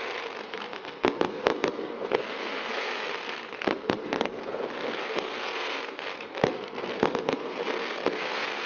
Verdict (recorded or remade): remade